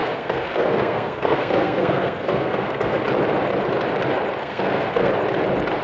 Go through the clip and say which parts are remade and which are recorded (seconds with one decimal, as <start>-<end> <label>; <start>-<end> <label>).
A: 0.0-3.0 remade; 3.0-4.4 recorded; 4.4-5.1 remade; 5.1-5.8 recorded